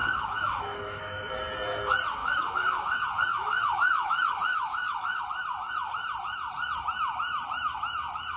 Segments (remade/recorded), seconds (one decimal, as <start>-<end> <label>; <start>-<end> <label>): 0.0-1.3 remade; 1.3-2.2 recorded; 2.2-5.2 remade; 5.2-8.4 recorded